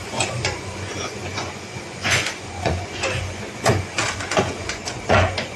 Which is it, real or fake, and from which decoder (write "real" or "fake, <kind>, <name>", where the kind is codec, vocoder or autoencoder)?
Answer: fake, vocoder, Vocos